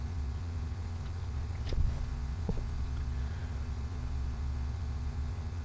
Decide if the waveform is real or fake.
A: fake